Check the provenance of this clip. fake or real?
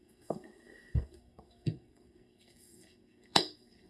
fake